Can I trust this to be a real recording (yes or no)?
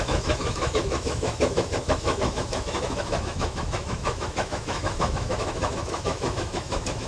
no